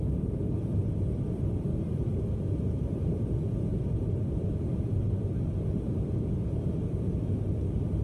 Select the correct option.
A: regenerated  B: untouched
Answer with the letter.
A